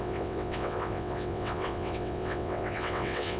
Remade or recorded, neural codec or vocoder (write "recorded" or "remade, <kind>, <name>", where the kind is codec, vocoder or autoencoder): remade, vocoder, WaveNeXt